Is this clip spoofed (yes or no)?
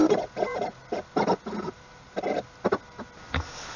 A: no